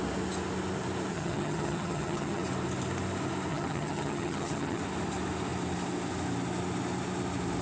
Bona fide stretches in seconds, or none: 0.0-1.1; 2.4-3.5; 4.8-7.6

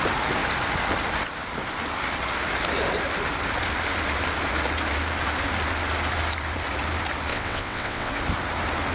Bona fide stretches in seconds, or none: 0.0-7.3; 8.1-8.9

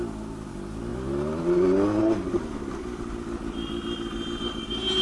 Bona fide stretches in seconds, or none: 0.0-5.0

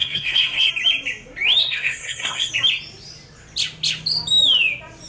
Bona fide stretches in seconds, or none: 0.7-1.6; 2.5-5.1

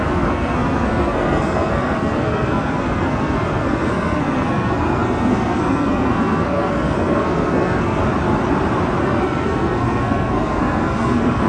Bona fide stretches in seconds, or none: 8.0-9.0

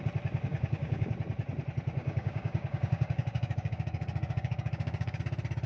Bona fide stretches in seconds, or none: 0.0-0.5; 1.1-2.0; 5.2-5.7

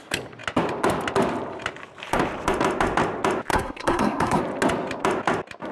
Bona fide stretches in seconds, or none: 0.0-3.5; 4.4-5.7

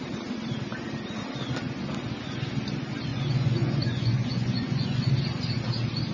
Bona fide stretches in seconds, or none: 0.0-3.1; 5.1-6.1